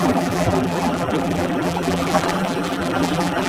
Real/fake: fake